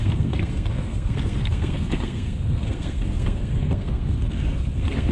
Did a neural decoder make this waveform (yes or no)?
yes